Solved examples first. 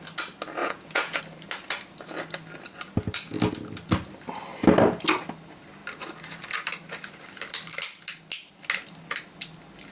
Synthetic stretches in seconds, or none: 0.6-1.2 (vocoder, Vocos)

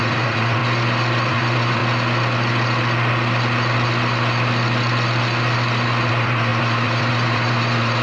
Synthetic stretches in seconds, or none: 0.0-0.6 (vocoder, Vocos); 1.3-1.8; 6.1-8.0